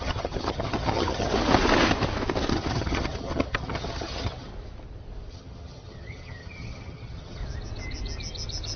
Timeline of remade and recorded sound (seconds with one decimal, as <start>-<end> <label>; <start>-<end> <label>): 0.0-1.3 remade; 1.3-2.5 recorded; 2.5-4.5 remade; 4.5-5.3 recorded; 5.3-7.4 remade; 7.4-8.8 recorded